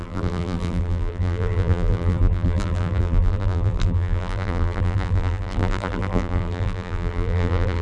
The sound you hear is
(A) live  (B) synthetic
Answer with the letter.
B